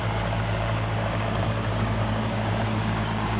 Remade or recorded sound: remade